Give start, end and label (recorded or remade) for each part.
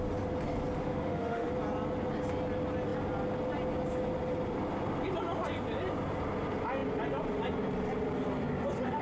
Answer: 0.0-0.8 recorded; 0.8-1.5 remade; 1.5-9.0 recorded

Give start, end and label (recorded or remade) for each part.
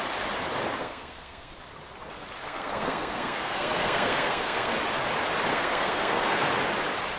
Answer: 0.0-0.8 recorded; 0.8-1.5 remade; 1.5-2.4 recorded; 2.4-4.7 remade; 4.7-5.5 recorded; 5.5-6.5 remade; 6.5-7.2 recorded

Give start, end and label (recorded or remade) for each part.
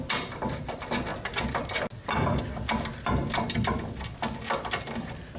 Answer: 0.0-5.4 recorded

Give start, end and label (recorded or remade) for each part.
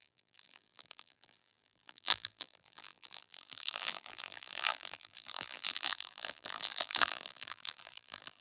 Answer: 0.0-8.4 remade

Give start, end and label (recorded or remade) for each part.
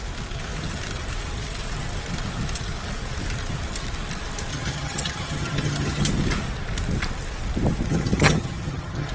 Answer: 0.0-4.5 recorded; 4.5-6.1 remade; 6.1-7.9 recorded; 7.9-9.1 remade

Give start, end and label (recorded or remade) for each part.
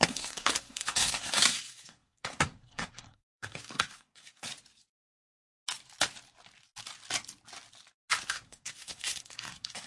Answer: 0.0-4.5 remade; 4.5-8.2 recorded; 8.2-9.9 remade